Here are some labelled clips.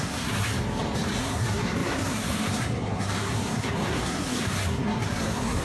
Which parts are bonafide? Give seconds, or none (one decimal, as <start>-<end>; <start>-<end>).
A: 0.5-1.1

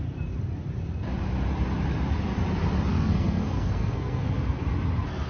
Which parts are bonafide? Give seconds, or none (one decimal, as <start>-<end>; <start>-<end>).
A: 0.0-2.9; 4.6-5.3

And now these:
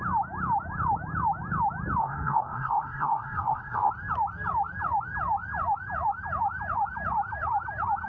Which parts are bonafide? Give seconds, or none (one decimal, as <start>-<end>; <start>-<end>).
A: 0.0-2.0; 3.9-8.1